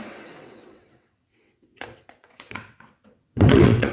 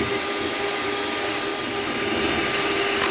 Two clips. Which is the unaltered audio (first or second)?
second